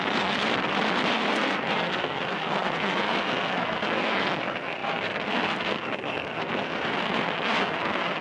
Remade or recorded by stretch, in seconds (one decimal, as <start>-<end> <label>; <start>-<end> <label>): 0.0-0.5 remade; 0.5-1.3 recorded; 1.3-8.2 remade